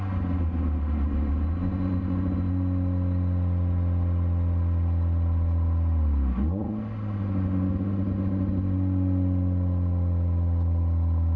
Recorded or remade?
recorded